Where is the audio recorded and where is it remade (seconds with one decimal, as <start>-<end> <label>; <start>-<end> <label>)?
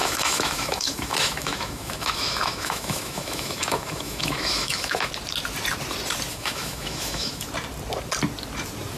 0.0-5.1 remade; 5.1-6.3 recorded; 6.3-7.5 remade; 7.5-9.0 recorded